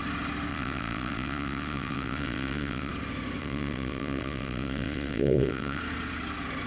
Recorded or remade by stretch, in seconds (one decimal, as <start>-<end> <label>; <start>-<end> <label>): 0.0-0.5 recorded; 0.5-2.9 remade; 2.9-3.4 recorded; 3.4-5.8 remade; 5.8-6.7 recorded